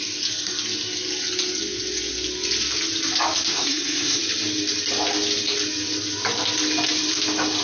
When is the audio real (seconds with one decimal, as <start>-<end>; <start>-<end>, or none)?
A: 0.0-3.5; 4.2-7.6